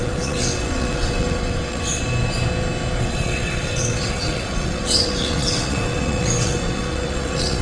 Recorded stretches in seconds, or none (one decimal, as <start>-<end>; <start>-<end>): 2.0-3.0